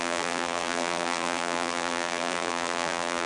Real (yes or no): no